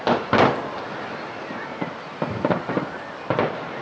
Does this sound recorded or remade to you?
recorded